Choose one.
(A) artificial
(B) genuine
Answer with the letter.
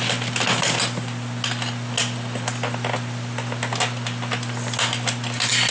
B